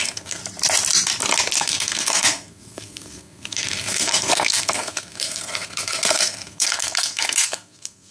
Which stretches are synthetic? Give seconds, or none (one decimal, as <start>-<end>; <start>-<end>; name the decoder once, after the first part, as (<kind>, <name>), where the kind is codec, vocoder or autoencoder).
0.0-0.4 (codec, SNAC); 1.6-8.1